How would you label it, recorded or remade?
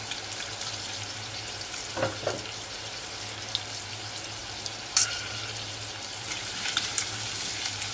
recorded